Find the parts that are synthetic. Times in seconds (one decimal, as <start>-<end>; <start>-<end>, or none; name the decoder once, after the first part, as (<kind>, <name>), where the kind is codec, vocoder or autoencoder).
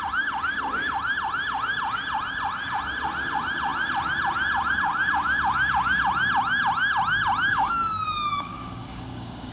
7.5-9.5 (codec, DAC)